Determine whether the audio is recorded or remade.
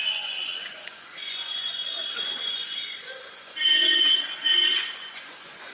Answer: remade